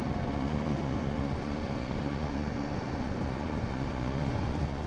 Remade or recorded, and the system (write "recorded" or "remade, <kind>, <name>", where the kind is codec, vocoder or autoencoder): remade, vocoder, Vocos